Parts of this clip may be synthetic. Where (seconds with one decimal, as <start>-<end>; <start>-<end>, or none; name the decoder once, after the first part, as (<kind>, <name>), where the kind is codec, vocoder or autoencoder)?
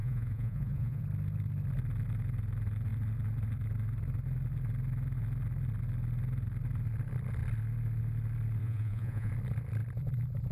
0.0-1.0 (vocoder, Vocos); 8.6-9.3